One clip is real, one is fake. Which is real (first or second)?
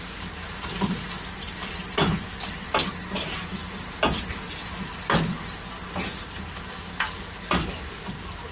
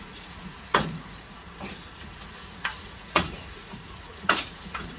first